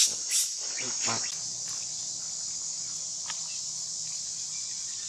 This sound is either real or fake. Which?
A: real